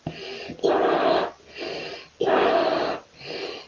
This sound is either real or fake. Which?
real